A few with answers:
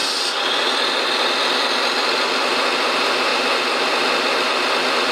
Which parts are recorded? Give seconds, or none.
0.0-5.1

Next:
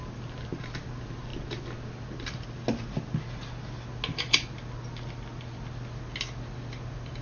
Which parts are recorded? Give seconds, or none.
0.0-7.2